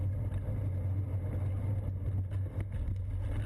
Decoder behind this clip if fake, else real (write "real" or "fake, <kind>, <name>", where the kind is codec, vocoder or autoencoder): real